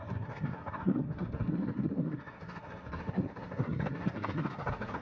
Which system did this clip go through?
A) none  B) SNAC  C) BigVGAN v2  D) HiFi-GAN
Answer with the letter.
B